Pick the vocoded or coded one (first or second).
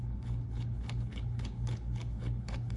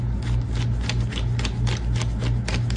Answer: first